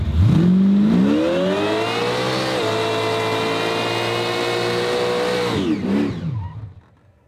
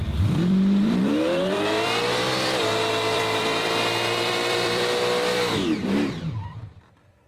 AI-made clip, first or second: second